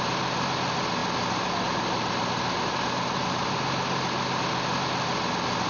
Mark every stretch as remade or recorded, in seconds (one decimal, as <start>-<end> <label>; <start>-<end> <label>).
0.0-5.7 recorded